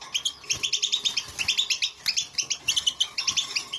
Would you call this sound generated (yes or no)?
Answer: no